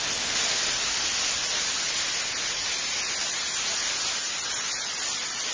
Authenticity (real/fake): real